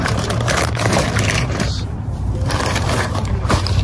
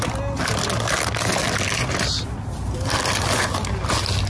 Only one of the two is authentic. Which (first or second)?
second